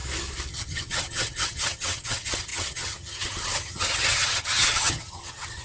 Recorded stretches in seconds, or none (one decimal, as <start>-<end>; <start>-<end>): 0.0-0.5